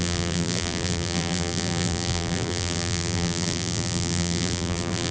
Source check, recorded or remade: remade